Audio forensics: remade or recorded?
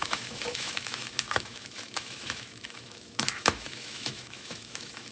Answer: remade